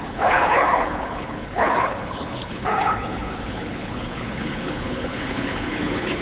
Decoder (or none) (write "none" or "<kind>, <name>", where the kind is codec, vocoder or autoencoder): codec, HILCodec